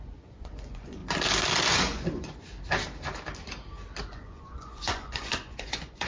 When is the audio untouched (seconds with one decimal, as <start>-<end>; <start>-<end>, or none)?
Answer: 1.0-1.7; 2.5-4.0